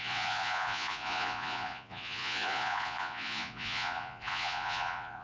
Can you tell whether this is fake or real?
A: fake